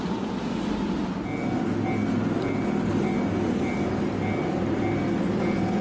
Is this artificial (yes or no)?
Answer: no